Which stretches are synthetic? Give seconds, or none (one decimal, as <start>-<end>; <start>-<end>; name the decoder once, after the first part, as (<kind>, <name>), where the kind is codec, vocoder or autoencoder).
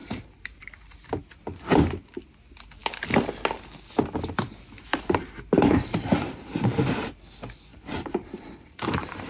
0.0-0.6 (vocoder, BigVGAN v2); 4.9-6.8; 7.7-9.3